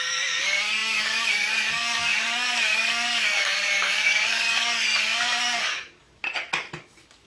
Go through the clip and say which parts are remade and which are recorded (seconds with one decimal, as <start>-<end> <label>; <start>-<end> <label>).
0.0-6.2 remade; 6.2-6.8 recorded; 6.8-7.3 remade